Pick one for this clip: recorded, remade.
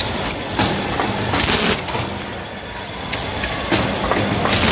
recorded